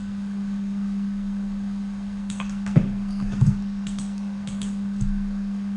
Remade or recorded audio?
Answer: remade